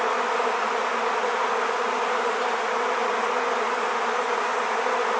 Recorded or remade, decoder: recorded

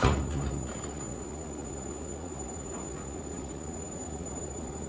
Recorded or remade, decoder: remade, vocoder, Vocos